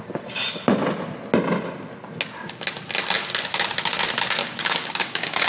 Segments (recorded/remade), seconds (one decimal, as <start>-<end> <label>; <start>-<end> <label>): 0.0-4.4 recorded; 4.4-5.5 remade